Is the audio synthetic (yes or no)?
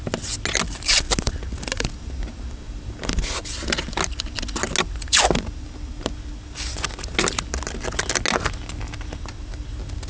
no